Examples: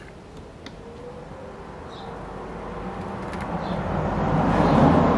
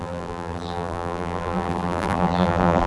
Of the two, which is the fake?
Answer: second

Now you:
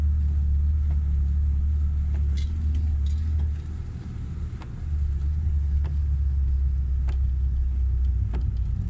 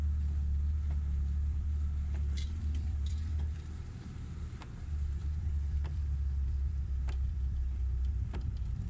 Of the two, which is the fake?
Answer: second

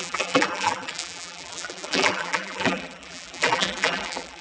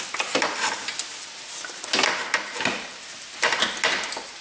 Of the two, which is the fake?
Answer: first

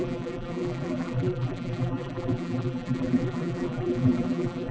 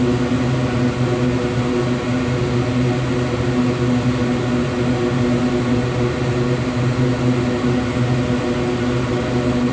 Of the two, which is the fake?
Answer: first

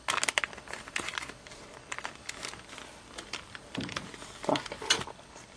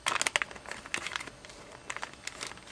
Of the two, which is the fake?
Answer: first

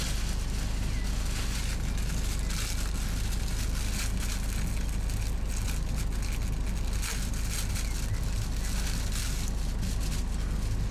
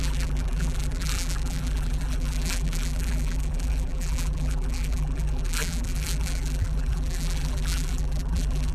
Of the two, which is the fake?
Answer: second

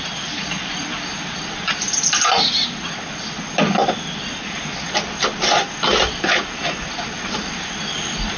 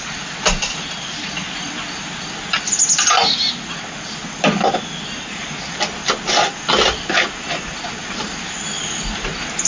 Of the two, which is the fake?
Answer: first